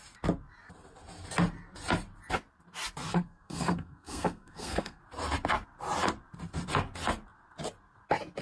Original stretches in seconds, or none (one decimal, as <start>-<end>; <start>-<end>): 0.0-3.1; 5.0-8.4